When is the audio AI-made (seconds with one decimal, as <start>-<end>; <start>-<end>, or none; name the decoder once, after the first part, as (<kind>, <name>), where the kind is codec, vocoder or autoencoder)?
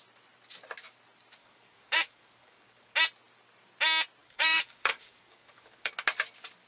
1.4-2.9 (codec, DAC); 4.2-5.9